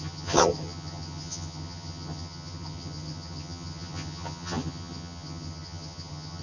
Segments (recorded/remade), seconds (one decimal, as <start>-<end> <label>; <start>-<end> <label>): 0.0-6.4 remade